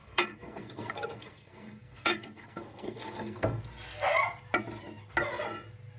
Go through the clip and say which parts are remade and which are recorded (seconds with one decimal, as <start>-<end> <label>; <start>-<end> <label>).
0.0-3.6 remade; 3.6-6.0 recorded

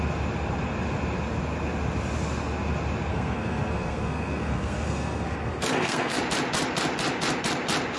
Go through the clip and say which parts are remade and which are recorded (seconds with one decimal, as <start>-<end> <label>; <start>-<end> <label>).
0.0-3.1 recorded; 3.1-6.2 remade; 6.2-8.0 recorded